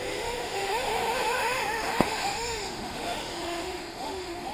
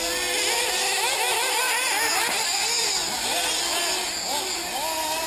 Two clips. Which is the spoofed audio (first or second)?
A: first